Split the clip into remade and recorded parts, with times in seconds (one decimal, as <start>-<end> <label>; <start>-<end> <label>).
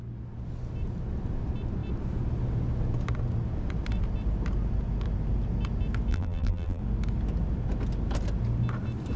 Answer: 0.0-6.1 recorded; 6.1-6.8 remade; 6.8-9.2 recorded